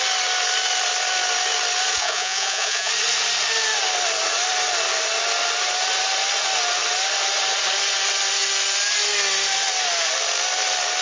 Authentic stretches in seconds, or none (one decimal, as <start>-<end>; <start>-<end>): 0.0-1.9; 2.9-11.0